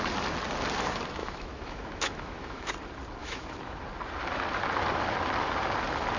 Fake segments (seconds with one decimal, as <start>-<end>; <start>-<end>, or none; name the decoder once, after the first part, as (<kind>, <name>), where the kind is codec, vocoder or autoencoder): 1.2-2.7 (autoencoder, DAC-VAE); 3.2-3.8